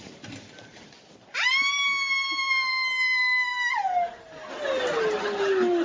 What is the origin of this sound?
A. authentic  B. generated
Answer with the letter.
A